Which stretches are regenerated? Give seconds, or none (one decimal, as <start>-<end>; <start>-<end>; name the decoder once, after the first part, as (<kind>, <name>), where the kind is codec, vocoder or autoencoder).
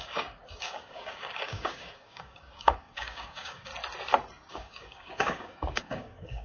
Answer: 0.0-3.7 (codec, DAC); 4.5-6.4